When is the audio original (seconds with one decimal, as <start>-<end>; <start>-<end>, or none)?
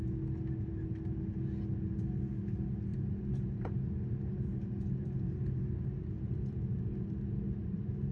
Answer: 0.0-2.9; 3.7-7.6